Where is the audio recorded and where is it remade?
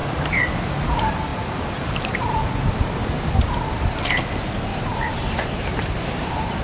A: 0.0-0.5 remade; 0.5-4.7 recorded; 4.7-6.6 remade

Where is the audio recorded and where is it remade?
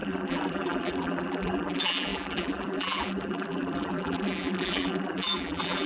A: 0.0-5.9 remade